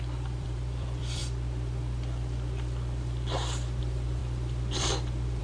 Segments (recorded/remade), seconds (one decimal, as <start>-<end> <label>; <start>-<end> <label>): 0.0-1.2 remade; 1.2-3.8 recorded; 3.8-4.2 remade; 4.2-5.4 recorded